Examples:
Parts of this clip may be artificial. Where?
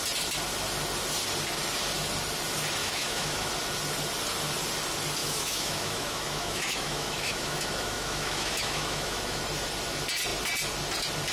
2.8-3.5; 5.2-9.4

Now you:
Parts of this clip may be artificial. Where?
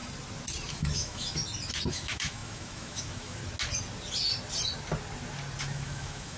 0.7-1.4; 1.9-3.4; 5.6-6.4